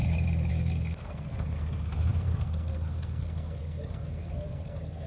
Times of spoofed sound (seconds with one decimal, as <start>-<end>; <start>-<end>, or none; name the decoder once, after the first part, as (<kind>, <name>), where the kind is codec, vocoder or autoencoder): 0.5-5.1 (codec, SNAC)